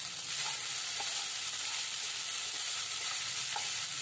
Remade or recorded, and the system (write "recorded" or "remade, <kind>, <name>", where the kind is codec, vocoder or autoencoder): recorded